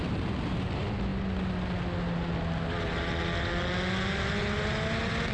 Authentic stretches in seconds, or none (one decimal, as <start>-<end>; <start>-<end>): 0.0-5.3